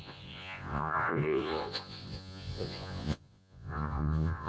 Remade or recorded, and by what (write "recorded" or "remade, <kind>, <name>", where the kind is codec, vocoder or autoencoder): remade, vocoder, Vocos